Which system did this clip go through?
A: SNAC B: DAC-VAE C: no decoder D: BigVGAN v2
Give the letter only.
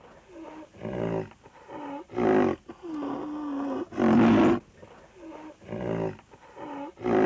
C